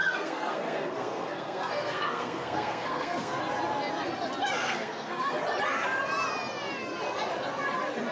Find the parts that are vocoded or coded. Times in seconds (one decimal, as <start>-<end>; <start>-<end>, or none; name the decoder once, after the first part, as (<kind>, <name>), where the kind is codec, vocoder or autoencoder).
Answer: 0.0-3.4 (codec, SNAC); 4.6-5.4

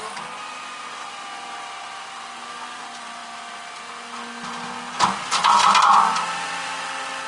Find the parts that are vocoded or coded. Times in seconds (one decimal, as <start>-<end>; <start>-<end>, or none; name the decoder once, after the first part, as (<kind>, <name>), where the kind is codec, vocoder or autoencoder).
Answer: none

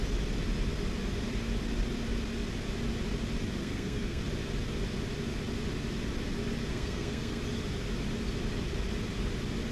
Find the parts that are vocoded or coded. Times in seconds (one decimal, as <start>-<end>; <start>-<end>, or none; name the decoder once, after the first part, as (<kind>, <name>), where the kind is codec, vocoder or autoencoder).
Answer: 3.6-4.2 (codec, SNAC); 6.7-7.4

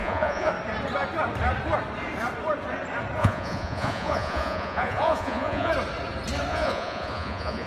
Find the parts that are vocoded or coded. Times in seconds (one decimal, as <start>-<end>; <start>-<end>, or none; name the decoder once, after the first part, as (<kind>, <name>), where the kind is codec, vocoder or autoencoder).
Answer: 0.0-0.5 (vocoder, Vocos); 3.2-5.7; 6.5-7.7

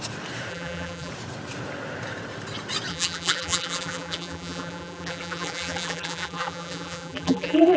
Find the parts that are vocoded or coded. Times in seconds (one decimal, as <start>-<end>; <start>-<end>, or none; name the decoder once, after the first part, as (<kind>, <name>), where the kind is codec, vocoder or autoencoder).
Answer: 0.5-1.1 (vocoder, BigVGAN v2); 2.9-7.8

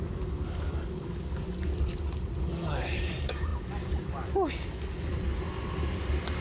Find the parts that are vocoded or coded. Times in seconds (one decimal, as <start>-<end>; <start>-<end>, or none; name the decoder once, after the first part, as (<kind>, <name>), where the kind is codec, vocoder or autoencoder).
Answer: 0.0-1.7 (codec, DAC); 2.4-5.1